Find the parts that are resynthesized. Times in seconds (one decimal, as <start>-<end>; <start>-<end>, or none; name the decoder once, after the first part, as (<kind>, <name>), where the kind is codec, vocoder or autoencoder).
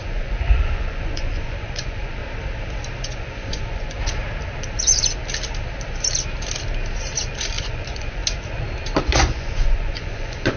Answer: 0.0-2.2 (vocoder, Vocos); 3.0-4.2; 7.6-8.2; 9.0-10.6